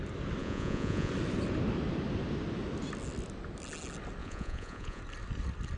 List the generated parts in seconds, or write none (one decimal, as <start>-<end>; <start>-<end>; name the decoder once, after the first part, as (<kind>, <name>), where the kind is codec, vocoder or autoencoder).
0.4-1.1 (vocoder, Vocos); 4.2-5.0